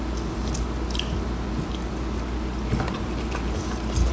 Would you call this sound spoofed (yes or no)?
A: no